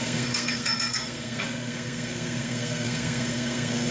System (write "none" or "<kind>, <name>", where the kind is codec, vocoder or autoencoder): codec, SNAC